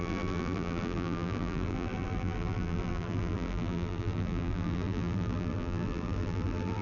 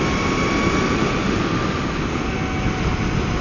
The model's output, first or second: first